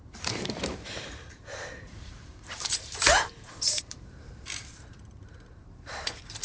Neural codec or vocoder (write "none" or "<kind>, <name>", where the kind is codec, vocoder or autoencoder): vocoder, BigVGAN v2